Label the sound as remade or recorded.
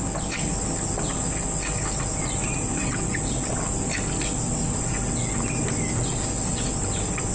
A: recorded